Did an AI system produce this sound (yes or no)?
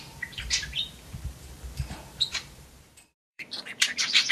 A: yes